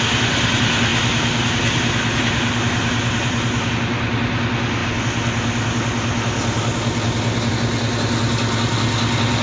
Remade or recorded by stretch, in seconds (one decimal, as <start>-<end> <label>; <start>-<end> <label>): 0.0-9.4 recorded